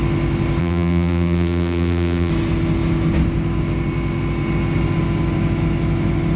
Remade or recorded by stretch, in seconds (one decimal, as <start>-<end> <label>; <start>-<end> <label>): 0.0-0.6 recorded; 0.6-2.3 remade; 2.3-6.4 recorded